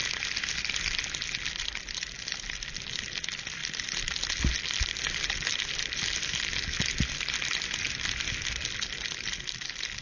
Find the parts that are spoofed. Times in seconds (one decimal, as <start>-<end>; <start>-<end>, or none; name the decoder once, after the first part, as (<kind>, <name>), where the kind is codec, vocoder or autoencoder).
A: none